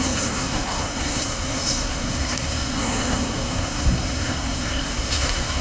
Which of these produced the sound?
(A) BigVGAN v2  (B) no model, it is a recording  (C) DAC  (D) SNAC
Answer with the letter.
D